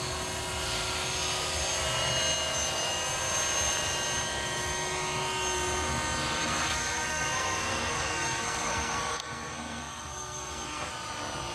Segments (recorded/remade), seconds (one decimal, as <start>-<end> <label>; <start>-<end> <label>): 0.0-6.4 recorded; 6.4-10.9 remade; 10.9-11.5 recorded